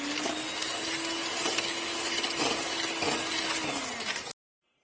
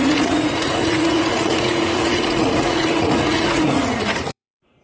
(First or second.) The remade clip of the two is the second